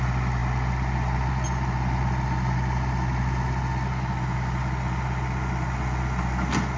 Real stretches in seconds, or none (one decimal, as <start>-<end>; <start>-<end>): 0.0-6.8